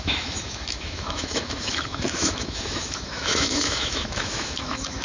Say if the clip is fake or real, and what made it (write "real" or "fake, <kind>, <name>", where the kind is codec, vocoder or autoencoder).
fake, autoencoder, DAC-VAE